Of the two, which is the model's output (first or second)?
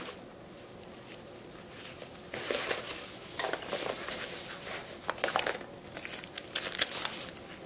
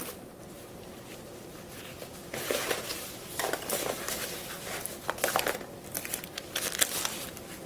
second